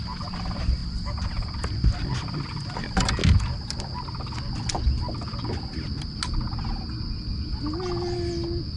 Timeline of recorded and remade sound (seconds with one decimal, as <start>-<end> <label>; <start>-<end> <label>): 0.0-8.8 recorded